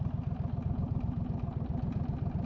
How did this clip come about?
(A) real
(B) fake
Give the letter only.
A